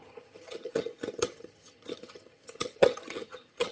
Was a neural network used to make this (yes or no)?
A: yes